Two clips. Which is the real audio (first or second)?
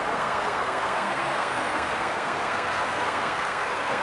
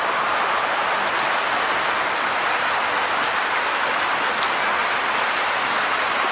second